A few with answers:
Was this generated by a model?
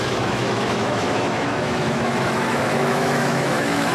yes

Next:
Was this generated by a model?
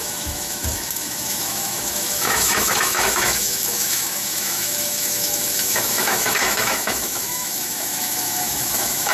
yes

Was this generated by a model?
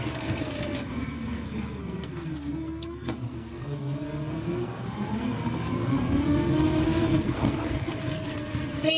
yes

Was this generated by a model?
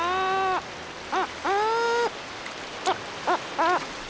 no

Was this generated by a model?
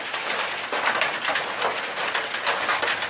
no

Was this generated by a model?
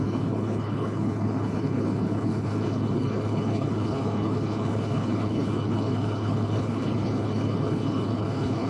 yes